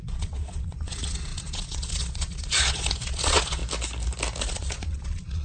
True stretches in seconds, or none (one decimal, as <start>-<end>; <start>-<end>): 3.6-4.4